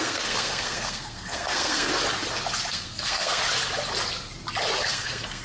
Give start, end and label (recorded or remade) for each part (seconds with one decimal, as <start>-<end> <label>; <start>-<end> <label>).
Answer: 0.0-1.9 remade; 1.9-2.7 recorded; 2.7-3.4 remade; 3.4-4.9 recorded; 4.9-5.4 remade